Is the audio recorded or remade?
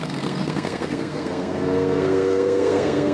remade